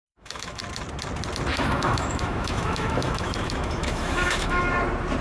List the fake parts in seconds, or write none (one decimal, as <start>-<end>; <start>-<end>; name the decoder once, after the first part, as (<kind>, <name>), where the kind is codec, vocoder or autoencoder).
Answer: 0.0-0.6 (autoencoder, DAC-VAE); 1.5-4.6